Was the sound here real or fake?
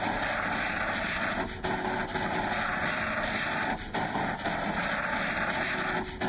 real